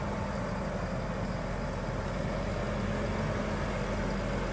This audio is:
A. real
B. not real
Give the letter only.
A